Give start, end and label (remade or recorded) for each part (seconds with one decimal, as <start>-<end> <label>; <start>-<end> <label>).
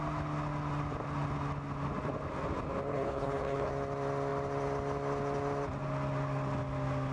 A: 0.0-2.9 recorded; 2.9-3.7 remade; 3.7-7.1 recorded